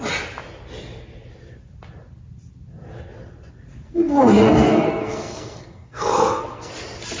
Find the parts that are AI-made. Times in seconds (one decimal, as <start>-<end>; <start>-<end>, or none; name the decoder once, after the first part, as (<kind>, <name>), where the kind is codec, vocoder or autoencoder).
3.7-6.7 (codec, SNAC)